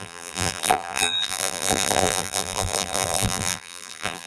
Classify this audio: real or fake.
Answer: fake